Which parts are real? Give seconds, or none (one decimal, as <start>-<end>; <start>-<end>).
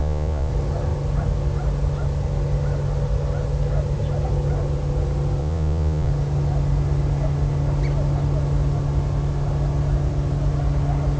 0.5-5.4; 6.1-11.2